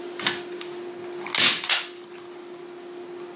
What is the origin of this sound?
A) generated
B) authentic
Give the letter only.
B